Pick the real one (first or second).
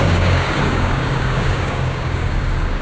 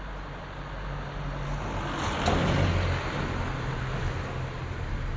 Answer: second